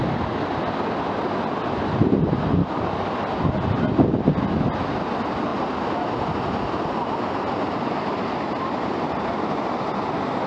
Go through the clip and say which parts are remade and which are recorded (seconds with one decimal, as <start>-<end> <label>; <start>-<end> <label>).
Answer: 0.0-2.6 recorded; 2.6-3.1 remade; 3.1-10.5 recorded